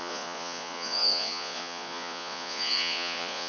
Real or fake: fake